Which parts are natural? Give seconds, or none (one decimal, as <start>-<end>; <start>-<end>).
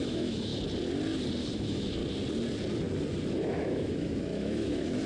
0.5-1.5; 2.0-3.3